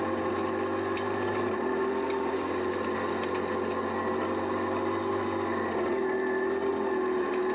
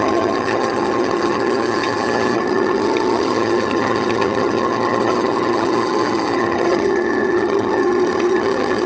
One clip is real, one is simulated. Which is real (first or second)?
first